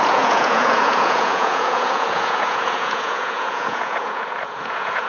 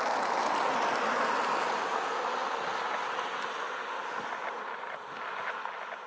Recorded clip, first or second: second